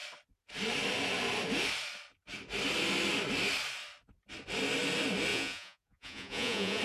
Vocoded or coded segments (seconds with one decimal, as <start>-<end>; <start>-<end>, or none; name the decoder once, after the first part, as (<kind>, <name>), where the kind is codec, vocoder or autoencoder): 5.3-6.8 (vocoder, Vocos)